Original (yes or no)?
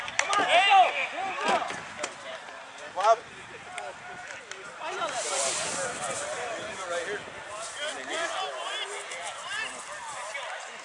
yes